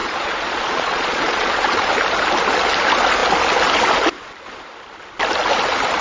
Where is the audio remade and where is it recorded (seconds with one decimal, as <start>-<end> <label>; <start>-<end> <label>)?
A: 0.0-1.9 remade; 1.9-6.0 recorded